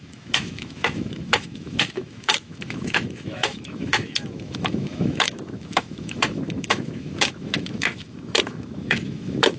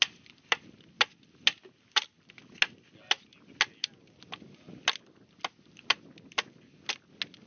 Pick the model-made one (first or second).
first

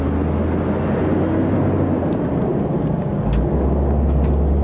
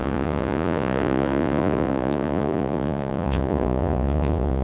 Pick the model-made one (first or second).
second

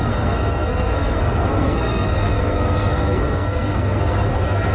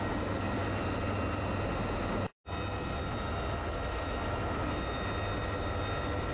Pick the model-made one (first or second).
first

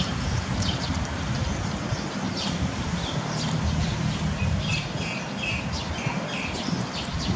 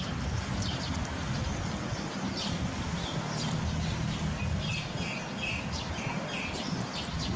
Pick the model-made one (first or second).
first